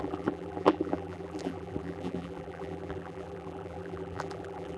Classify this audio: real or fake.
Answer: fake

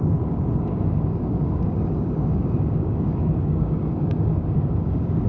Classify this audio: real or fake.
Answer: fake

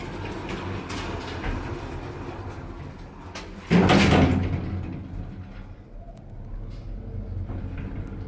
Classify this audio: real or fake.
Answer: real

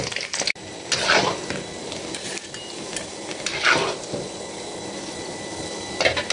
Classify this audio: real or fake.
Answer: real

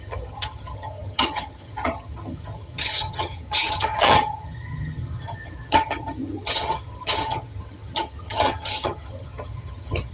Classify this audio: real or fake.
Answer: fake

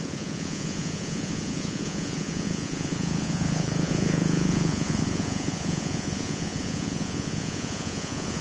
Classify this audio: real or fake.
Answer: fake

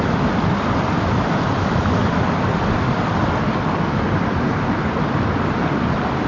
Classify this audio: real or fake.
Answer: real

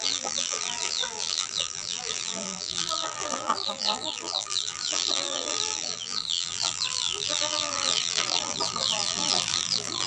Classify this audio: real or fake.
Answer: fake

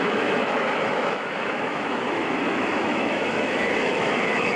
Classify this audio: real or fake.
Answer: fake